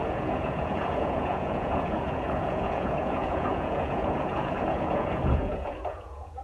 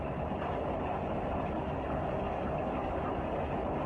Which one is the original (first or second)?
second